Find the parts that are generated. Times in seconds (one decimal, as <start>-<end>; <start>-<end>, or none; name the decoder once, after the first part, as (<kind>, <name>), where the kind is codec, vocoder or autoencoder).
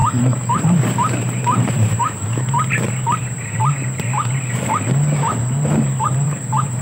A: 0.0-3.6 (vocoder, BigVGAN v2); 5.2-6.8